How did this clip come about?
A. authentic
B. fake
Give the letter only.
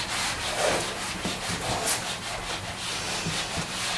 A